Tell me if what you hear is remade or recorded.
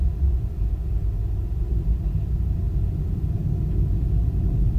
recorded